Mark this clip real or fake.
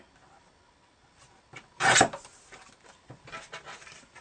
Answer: real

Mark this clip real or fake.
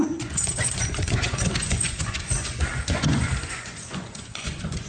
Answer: fake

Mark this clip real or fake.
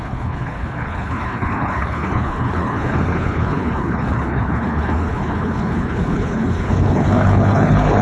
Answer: fake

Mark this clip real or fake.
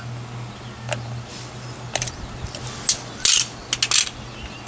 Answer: real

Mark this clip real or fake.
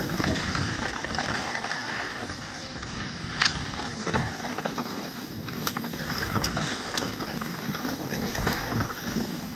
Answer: fake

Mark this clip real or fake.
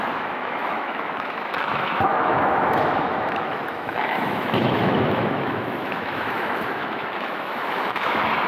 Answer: fake